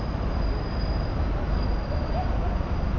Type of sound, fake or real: real